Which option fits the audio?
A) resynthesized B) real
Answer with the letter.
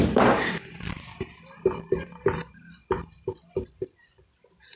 A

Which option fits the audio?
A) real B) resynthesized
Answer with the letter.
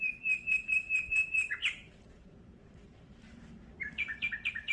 B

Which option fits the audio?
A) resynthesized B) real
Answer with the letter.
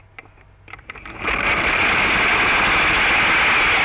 B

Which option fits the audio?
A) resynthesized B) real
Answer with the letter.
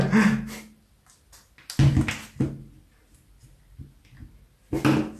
B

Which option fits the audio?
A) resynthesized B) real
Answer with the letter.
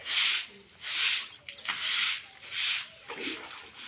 B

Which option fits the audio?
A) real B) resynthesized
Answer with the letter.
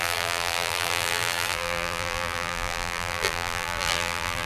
B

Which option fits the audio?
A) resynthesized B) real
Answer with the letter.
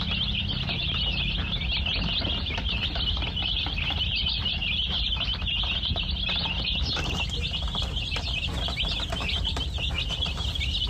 B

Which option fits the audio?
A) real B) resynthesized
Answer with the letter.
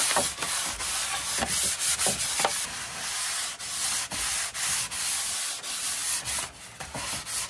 A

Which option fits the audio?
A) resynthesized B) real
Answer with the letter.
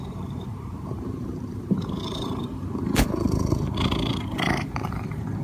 A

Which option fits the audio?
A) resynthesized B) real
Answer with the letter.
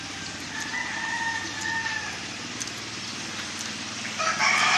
B